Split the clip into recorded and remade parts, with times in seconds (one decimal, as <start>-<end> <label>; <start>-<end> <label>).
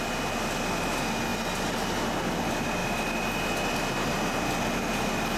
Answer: 0.0-5.4 recorded